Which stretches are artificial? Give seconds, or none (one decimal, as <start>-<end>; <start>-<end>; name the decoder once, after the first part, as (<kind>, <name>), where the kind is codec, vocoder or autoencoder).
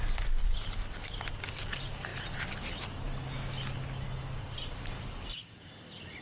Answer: none